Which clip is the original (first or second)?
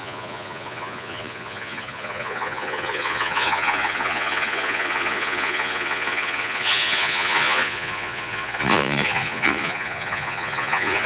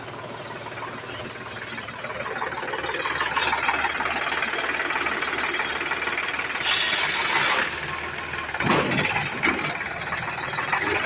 second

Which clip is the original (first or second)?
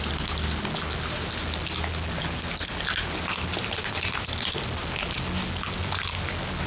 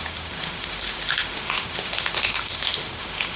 first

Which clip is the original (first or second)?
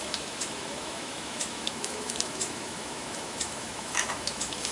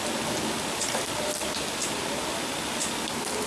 second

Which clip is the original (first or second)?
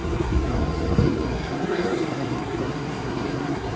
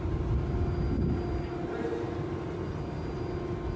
second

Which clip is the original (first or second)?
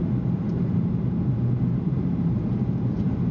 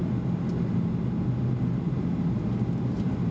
second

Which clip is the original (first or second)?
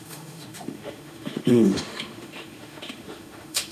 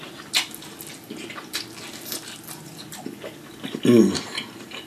second